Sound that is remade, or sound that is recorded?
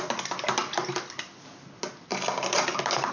recorded